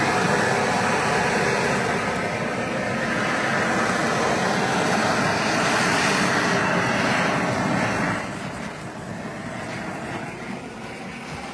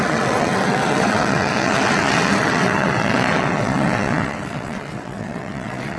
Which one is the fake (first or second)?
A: second